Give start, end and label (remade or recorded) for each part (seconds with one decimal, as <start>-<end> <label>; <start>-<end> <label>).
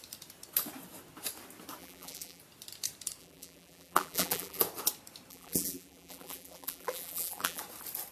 0.0-1.8 recorded; 1.8-2.4 remade; 2.4-3.2 recorded; 3.2-4.6 remade; 4.6-5.3 recorded; 5.3-7.6 remade; 7.6-8.1 recorded